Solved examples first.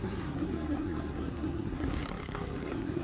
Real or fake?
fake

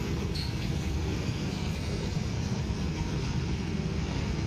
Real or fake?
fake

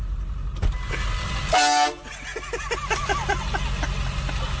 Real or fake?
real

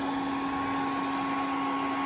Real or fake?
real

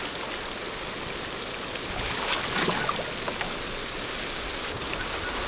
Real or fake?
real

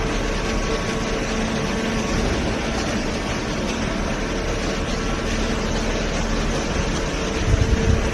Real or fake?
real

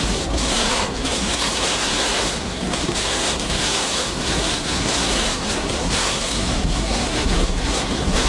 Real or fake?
fake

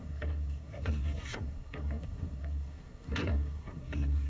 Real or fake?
fake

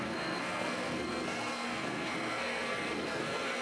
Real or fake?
fake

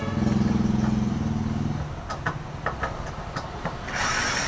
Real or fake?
real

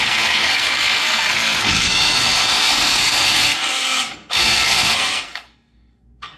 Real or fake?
fake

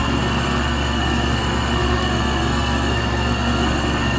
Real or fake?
fake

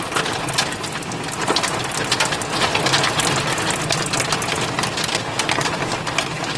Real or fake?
real